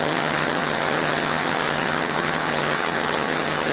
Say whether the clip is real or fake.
fake